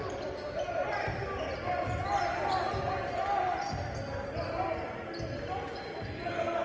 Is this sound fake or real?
real